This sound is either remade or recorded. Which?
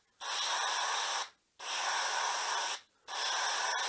recorded